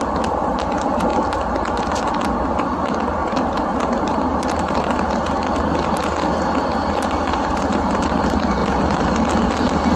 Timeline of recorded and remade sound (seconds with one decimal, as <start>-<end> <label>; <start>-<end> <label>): 0.0-3.2 recorded; 3.2-5.1 remade; 5.1-7.3 recorded; 7.3-8.0 remade; 8.0-8.6 recorded; 8.6-9.3 remade; 9.3-10.0 recorded